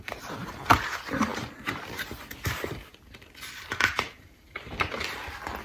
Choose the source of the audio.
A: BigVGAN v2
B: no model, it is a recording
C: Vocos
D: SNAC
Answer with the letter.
A